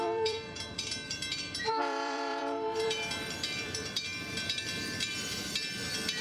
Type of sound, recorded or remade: remade